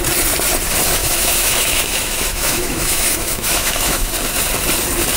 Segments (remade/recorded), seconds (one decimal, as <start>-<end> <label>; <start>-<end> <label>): 0.0-1.0 recorded; 1.0-4.1 remade; 4.1-5.2 recorded